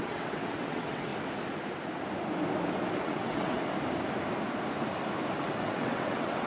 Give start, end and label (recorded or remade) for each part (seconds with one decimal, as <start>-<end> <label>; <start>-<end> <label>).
0.0-1.1 remade; 1.1-3.0 recorded; 3.0-3.6 remade; 3.6-5.4 recorded; 5.4-6.5 remade